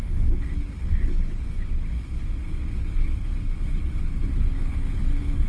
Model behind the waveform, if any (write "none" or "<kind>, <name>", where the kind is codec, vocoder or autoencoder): codec, HILCodec